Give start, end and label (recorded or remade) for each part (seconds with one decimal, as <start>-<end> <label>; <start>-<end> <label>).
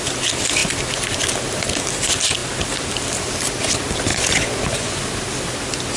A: 0.0-4.1 recorded; 4.1-5.0 remade; 5.0-6.0 recorded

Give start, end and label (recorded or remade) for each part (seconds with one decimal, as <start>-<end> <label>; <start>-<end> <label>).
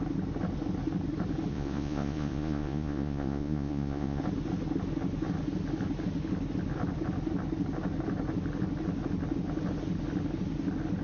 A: 0.0-1.5 recorded; 1.5-4.2 remade; 4.2-11.0 recorded